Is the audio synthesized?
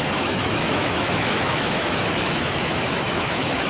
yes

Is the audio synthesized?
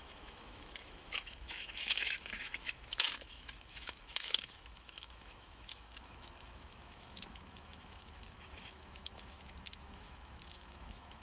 yes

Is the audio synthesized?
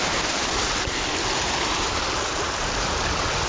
no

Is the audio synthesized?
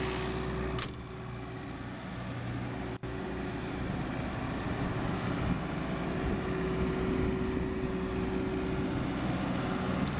no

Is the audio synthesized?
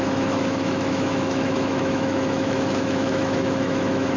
yes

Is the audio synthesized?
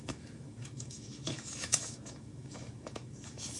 yes